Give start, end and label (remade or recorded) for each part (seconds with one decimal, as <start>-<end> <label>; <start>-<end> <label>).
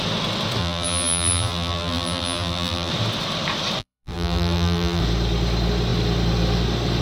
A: 0.0-0.6 recorded; 0.6-2.9 remade; 2.9-3.8 recorded; 3.8-5.0 remade; 5.0-7.0 recorded